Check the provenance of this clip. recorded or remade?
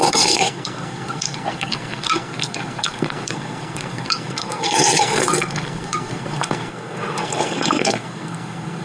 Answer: remade